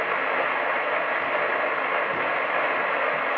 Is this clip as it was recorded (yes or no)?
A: yes